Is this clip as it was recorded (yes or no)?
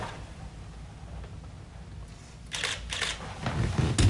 yes